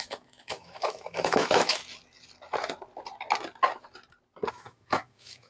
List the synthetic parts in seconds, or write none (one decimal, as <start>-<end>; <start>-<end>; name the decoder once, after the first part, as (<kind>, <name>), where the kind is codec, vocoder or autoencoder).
0.0-1.8 (autoencoder, DAC-VAE); 4.5-5.5